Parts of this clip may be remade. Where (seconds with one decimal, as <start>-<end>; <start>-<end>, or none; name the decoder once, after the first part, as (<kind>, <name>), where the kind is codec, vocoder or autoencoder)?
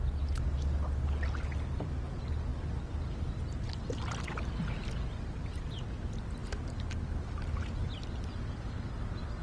none